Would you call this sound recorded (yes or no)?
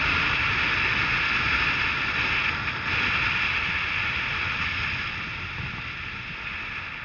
yes